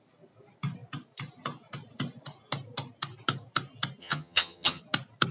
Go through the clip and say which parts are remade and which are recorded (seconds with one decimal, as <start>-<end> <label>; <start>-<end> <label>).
0.0-4.0 recorded; 4.0-4.8 remade; 4.8-5.3 recorded